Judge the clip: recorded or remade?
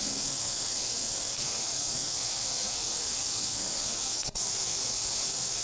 remade